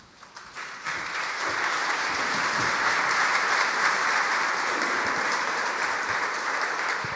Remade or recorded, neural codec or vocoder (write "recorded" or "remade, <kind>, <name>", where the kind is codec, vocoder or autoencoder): remade, vocoder, BigVGAN v2